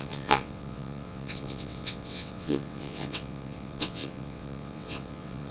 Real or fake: fake